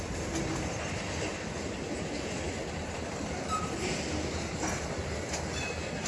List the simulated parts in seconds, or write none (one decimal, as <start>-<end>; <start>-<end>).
none